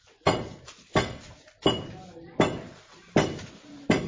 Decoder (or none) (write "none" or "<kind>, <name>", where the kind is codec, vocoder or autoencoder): none